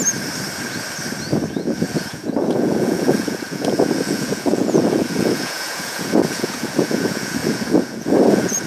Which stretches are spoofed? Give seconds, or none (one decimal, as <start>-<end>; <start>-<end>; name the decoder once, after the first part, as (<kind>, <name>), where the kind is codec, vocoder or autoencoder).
1.5-8.7 (vocoder, Vocos)